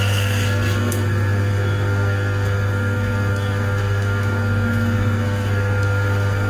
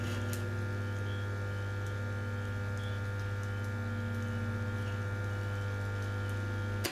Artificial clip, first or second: first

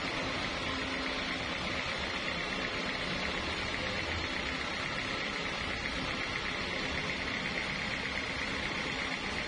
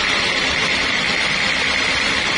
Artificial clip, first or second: second